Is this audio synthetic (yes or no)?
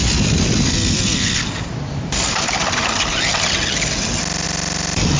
no